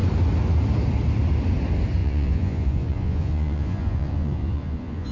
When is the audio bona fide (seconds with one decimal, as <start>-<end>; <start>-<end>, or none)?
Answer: 0.0-2.0